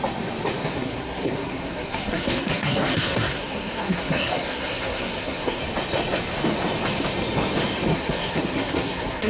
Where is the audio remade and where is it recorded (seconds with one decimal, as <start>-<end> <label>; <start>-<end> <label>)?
0.0-0.6 recorded; 0.6-5.6 remade; 5.6-7.9 recorded; 7.9-9.3 remade